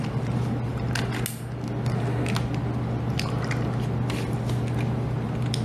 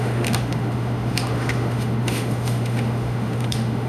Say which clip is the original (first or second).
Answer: first